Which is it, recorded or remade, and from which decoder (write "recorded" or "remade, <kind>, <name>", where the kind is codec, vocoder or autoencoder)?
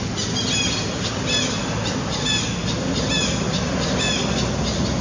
recorded